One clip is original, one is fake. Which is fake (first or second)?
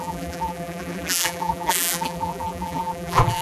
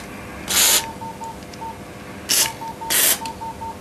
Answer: first